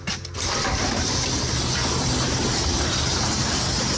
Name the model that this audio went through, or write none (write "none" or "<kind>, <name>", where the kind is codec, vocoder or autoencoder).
vocoder, BigVGAN v2